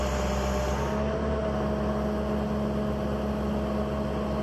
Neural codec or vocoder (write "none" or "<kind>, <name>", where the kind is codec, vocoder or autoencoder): none